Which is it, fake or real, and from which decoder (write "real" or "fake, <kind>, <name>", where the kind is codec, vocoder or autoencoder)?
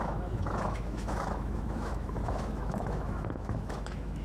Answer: fake, autoencoder, DAC-VAE